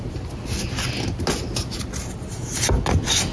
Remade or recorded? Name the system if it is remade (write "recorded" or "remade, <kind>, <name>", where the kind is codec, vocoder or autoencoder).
recorded